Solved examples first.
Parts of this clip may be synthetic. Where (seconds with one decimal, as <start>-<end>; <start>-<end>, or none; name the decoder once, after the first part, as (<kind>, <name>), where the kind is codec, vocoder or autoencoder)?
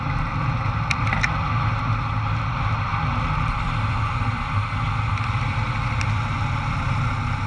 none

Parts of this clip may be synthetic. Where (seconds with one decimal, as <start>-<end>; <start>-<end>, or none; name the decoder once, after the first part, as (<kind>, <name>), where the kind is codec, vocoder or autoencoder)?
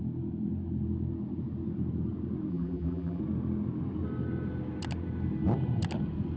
2.5-3.2 (vocoder, BigVGAN v2)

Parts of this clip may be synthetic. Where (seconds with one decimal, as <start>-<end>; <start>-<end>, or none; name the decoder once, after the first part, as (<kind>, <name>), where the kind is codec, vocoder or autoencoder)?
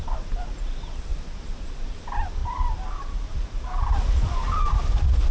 2.4-3.3 (vocoder, BigVGAN v2)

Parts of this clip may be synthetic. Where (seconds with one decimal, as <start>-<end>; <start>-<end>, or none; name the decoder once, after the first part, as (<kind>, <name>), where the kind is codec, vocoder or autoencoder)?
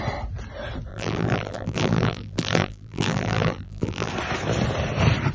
0.9-4.1 (vocoder, BigVGAN v2)